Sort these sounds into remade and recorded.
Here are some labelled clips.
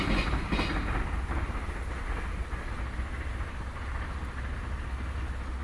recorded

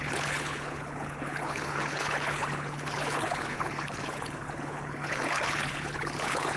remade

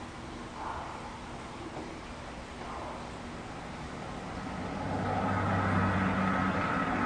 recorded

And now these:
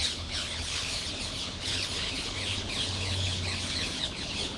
remade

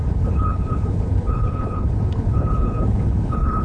remade